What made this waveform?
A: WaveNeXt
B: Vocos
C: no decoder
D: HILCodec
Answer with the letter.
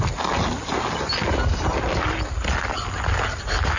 C